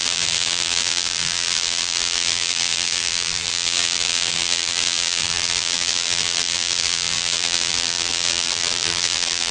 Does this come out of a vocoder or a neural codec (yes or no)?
yes